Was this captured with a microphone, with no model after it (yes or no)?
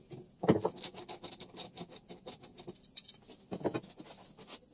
yes